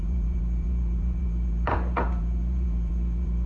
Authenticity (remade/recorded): remade